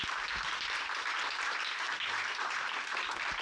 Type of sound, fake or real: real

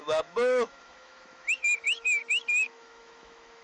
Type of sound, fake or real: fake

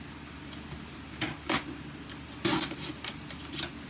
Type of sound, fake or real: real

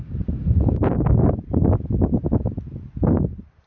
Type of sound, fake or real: real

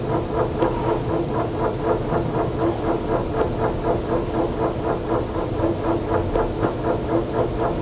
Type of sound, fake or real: real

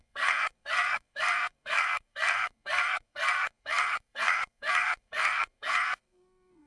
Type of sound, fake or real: fake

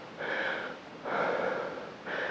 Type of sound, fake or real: real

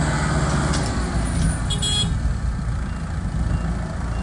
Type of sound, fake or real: real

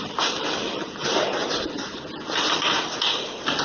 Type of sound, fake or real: real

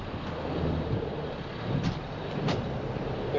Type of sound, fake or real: real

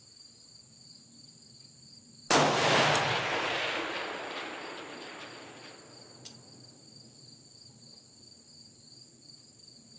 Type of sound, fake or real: real